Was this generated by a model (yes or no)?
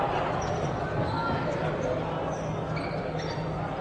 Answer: no